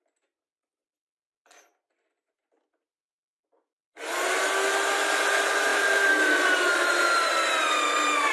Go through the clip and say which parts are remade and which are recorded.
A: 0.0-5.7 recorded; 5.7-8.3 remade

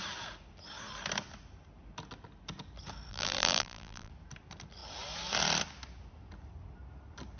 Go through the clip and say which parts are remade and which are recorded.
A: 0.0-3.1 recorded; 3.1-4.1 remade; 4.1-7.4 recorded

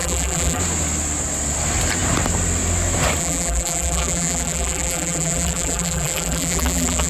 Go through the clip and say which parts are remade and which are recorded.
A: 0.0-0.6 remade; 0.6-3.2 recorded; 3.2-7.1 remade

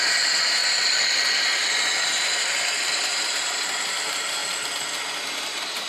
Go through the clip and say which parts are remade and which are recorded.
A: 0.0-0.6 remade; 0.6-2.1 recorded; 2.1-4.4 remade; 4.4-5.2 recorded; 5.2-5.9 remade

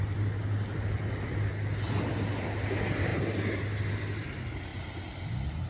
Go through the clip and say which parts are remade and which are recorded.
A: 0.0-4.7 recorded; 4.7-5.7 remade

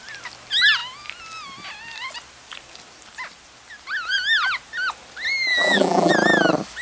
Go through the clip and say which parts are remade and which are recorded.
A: 0.0-5.5 recorded; 5.5-6.1 remade; 6.1-6.8 recorded

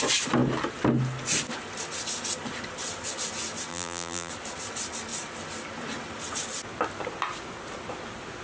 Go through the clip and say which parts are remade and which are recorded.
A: 0.0-3.7 recorded; 3.7-4.3 remade; 4.3-8.4 recorded

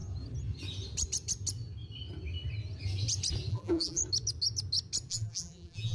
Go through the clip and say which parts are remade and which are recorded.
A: 0.0-3.5 recorded; 3.5-4.0 remade; 4.0-5.1 recorded; 5.1-5.9 remade